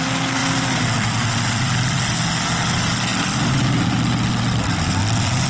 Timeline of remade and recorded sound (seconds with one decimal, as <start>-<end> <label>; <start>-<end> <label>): 0.0-5.5 recorded